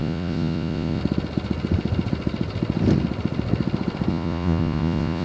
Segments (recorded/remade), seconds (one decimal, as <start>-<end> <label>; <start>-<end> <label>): 0.0-1.0 remade; 1.0-4.1 recorded; 4.1-5.2 remade